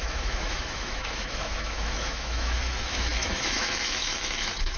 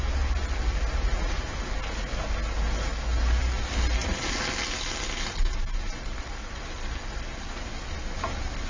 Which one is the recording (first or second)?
second